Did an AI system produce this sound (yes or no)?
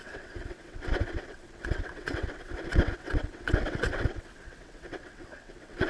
yes